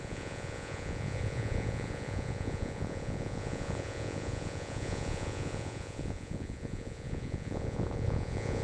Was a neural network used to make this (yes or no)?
yes